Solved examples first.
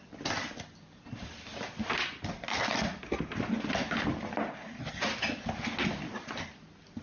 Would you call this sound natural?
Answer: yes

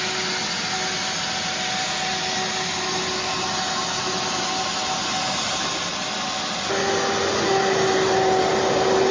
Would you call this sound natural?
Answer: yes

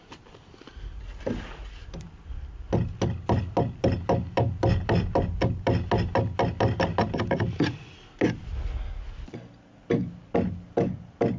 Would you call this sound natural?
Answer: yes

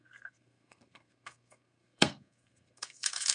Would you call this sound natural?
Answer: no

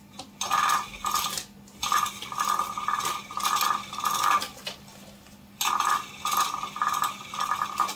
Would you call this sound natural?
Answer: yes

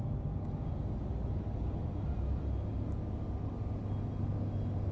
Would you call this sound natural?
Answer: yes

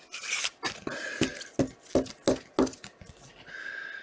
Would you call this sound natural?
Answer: yes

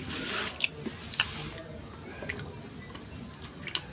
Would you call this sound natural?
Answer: yes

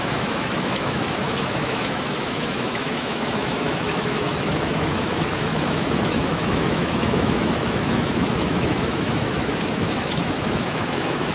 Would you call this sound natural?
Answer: no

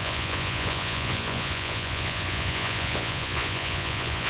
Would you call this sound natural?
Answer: no